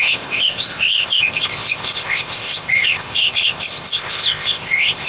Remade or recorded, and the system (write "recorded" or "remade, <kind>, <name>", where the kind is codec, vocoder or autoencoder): remade, codec, ZipCodec